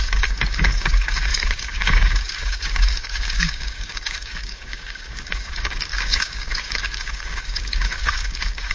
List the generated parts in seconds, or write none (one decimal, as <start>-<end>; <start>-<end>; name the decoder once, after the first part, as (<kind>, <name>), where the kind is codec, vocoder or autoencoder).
0.0-8.7 (codec, DAC)